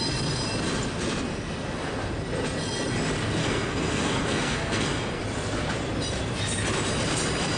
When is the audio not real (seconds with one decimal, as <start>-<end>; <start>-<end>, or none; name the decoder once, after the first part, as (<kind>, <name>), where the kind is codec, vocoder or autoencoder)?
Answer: 3.4-5.2 (codec, SNAC)